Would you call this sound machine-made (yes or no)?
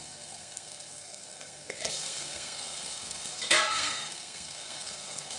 yes